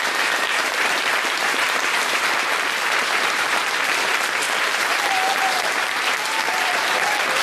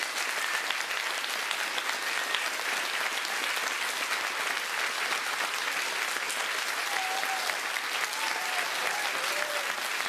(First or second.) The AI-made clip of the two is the first